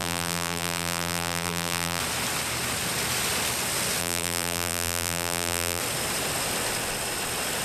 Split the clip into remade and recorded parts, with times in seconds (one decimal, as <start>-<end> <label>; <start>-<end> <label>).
0.0-2.0 remade; 2.0-4.0 recorded; 4.0-5.8 remade; 5.8-7.6 recorded

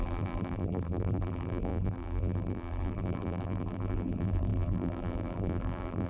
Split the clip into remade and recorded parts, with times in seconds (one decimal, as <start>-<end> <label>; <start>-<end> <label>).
0.0-6.1 remade

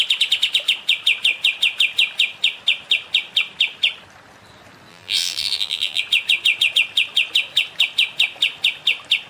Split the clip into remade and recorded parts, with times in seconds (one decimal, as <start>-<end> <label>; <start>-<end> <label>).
0.0-4.9 recorded; 4.9-6.0 remade; 6.0-9.3 recorded

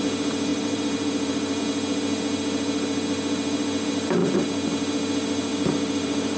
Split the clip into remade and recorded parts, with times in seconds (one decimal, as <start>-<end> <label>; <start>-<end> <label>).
0.0-0.5 recorded; 0.5-1.6 remade; 1.6-5.5 recorded; 5.5-6.4 remade